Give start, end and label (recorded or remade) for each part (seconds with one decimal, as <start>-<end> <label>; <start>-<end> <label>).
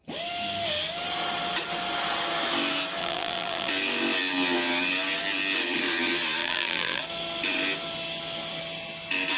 0.0-3.0 recorded; 3.0-3.7 remade; 3.7-6.4 recorded; 6.4-7.0 remade; 7.0-9.4 recorded